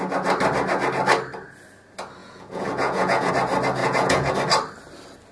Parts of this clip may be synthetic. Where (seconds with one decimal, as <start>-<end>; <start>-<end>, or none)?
2.2-3.3; 3.8-4.3